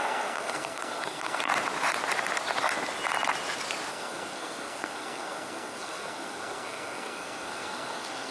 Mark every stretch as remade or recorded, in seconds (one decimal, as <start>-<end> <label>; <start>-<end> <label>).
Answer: 0.0-1.4 remade; 1.4-3.9 recorded; 3.9-8.3 remade